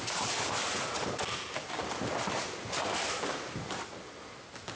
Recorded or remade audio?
recorded